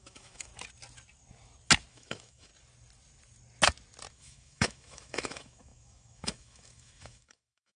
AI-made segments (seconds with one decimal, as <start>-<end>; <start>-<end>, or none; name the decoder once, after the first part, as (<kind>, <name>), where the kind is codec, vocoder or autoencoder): 0.0-0.5 (autoencoder, DAC-VAE); 1.9-2.5; 4.1-7.8